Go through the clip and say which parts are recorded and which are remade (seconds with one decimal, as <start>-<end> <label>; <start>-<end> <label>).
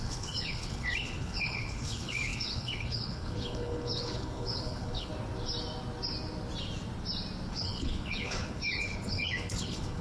0.0-5.1 remade; 5.1-7.5 recorded; 7.5-10.0 remade